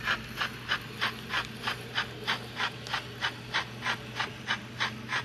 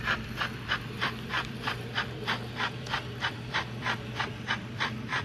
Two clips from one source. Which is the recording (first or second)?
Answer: first